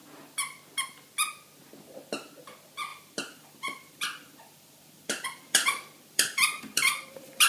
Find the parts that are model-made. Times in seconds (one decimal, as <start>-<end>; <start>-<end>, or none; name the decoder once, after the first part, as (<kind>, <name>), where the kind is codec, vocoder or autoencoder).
2.9-7.5 (vocoder, BigVGAN v2)